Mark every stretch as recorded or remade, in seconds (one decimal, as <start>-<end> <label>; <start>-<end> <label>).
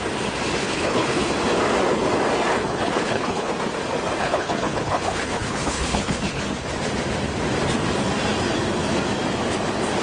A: 0.0-0.6 recorded; 0.6-1.3 remade; 1.3-2.5 recorded; 2.5-3.5 remade; 3.5-4.2 recorded; 4.2-6.4 remade; 6.4-10.0 recorded